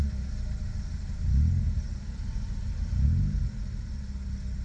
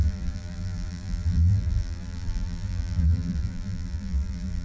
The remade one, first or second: second